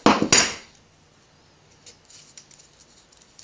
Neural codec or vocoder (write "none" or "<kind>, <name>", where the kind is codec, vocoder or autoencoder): none